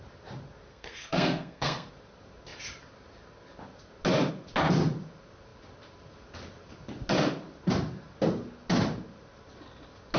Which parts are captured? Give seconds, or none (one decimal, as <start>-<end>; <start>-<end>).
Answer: 0.0-0.7; 1.9-10.2